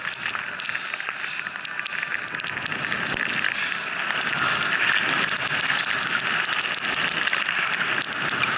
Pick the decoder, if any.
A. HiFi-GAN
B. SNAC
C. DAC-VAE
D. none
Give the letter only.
D